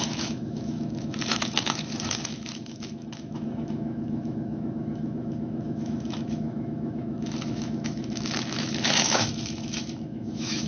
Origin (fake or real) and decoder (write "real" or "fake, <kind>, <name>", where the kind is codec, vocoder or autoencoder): fake, autoencoder, DAC-VAE